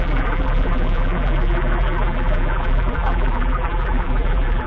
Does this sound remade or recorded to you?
remade